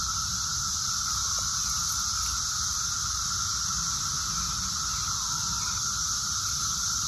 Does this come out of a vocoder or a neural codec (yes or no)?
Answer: no